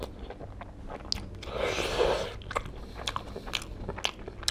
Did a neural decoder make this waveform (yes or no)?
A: no